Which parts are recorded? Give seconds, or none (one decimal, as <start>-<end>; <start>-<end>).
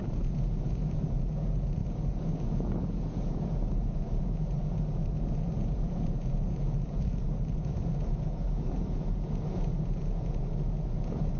none